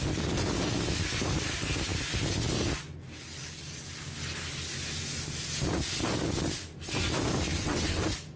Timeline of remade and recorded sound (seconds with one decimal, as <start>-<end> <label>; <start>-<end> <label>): 0.0-7.5 recorded; 7.5-8.0 remade; 8.0-8.4 recorded